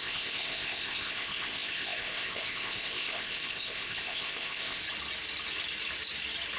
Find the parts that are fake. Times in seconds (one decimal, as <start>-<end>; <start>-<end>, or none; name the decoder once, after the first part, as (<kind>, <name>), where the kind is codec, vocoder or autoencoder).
0.0-4.8 (codec, ZipCodec)